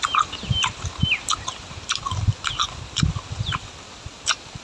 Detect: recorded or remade recorded